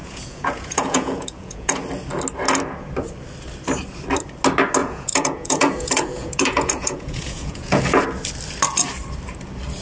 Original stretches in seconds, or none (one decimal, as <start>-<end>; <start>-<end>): 1.8-4.8; 7.8-9.8